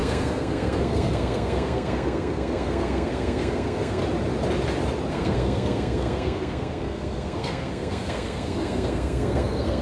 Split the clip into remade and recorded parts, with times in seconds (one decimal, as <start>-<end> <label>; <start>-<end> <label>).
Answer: 0.0-4.0 remade; 4.0-5.1 recorded; 5.1-9.8 remade